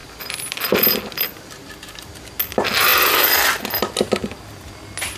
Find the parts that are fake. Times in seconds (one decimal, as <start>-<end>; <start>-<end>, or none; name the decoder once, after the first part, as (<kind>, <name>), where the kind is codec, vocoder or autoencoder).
0.0-2.1 (vocoder, BigVGAN v2); 2.9-3.6; 4.2-4.7